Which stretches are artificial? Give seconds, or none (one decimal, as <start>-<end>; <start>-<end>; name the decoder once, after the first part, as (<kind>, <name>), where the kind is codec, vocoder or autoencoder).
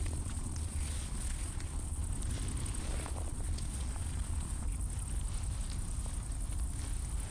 0.0-2.0 (vocoder, Vocos); 2.8-4.7